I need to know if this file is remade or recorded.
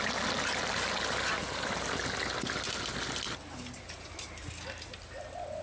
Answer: recorded